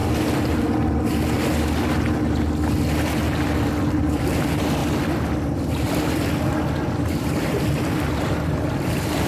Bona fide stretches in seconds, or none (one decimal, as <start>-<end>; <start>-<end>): 0.0-4.2; 4.8-6.6